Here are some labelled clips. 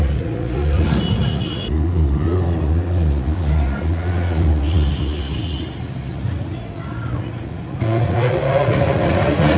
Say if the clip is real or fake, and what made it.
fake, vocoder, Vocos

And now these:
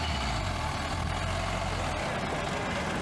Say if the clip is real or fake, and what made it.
real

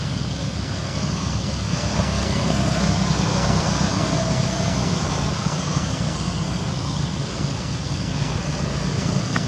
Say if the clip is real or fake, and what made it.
fake, codec, SNAC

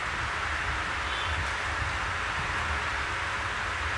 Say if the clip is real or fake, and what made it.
real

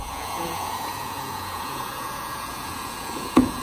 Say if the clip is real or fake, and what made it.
fake, vocoder, Vocos